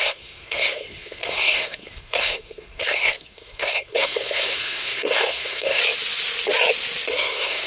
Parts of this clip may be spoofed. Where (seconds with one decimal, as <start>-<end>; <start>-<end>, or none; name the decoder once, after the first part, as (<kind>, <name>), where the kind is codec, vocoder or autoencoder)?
0.0-5.8 (codec, SNAC); 7.1-7.7